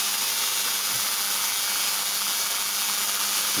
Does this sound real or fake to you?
real